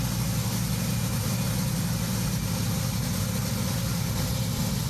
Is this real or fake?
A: real